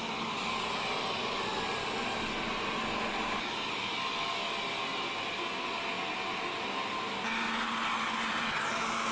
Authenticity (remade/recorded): recorded